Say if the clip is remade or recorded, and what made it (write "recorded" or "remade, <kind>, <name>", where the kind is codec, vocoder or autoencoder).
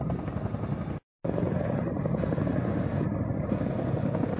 recorded